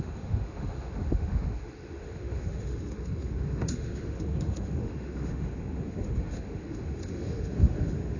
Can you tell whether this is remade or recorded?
remade